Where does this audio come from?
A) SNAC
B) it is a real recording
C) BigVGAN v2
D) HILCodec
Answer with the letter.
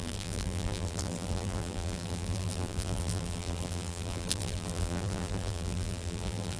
C